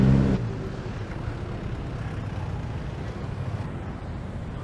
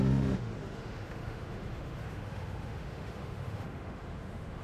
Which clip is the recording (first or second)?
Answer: first